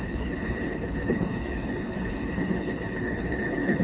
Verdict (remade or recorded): remade